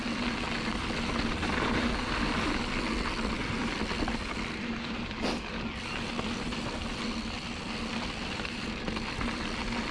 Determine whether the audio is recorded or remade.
recorded